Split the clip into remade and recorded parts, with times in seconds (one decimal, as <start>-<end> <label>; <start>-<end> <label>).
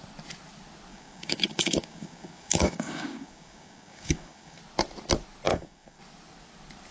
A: 0.0-0.9 recorded; 0.9-4.6 remade; 4.6-5.5 recorded; 5.5-6.0 remade; 6.0-6.9 recorded